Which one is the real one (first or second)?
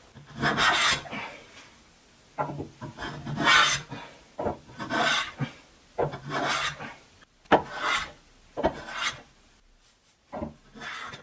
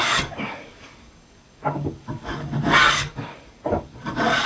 first